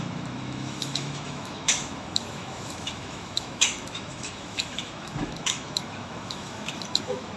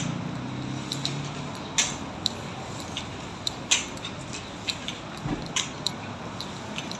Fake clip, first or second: first